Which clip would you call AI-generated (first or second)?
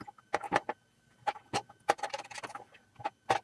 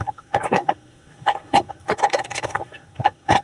second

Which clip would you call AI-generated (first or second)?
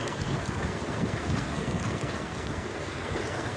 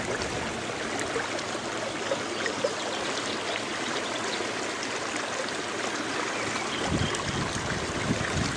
first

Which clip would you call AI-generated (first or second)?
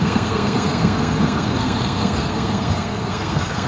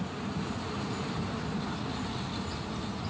first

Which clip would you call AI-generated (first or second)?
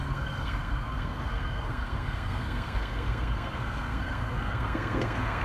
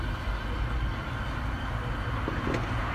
first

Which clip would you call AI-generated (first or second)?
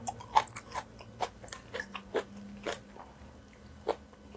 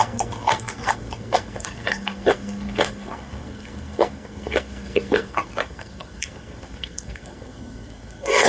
second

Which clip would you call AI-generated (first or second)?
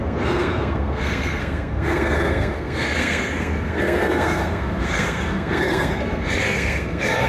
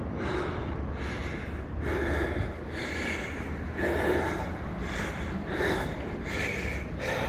first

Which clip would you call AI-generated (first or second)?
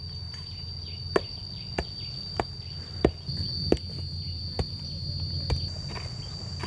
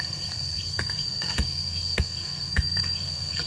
second